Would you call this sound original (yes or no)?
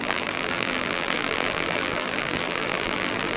no